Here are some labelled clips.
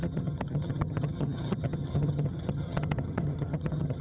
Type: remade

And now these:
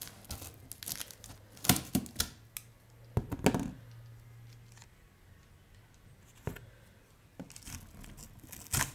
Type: recorded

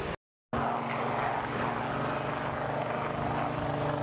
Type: recorded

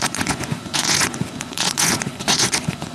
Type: remade